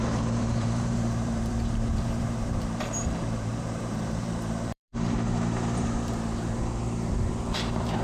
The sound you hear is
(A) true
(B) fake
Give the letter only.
B